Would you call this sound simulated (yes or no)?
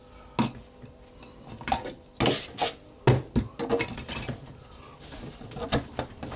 no